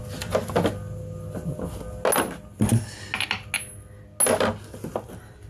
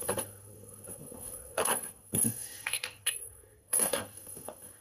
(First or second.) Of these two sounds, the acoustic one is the first